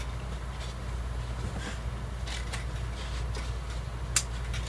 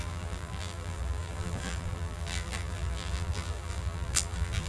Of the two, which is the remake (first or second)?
second